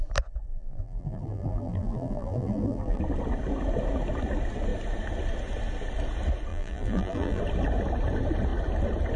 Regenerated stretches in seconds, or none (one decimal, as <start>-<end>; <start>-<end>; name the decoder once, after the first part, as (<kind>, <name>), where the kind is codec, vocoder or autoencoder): 0.5-3.0 (vocoder, BigVGAN v2); 6.5-7.4